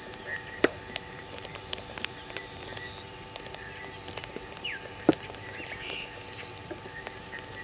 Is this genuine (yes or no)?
no